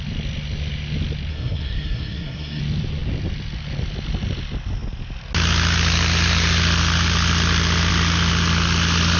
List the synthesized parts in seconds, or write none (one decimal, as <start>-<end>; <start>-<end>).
1.3-2.6

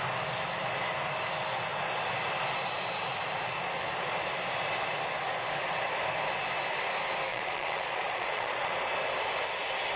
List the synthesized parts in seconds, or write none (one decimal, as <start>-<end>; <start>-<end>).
7.3-8.7

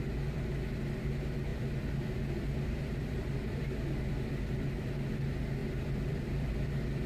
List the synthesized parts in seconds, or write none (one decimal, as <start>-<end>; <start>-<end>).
1.5-4.1; 5.6-7.1

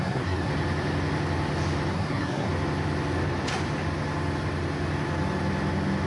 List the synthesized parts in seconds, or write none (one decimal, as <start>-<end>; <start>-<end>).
0.0-0.5; 1.9-2.5